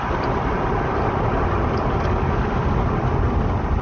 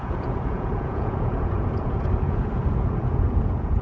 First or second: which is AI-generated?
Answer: second